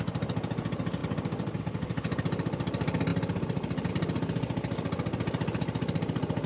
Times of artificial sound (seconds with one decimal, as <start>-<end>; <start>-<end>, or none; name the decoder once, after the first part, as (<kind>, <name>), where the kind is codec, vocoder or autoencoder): none